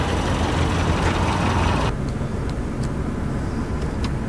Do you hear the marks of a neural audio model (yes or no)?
no